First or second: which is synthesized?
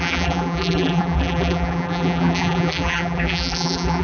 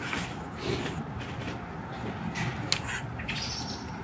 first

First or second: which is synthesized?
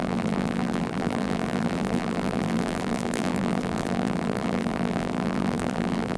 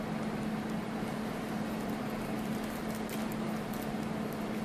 first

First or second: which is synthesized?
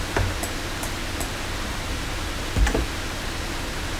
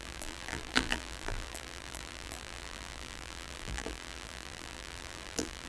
second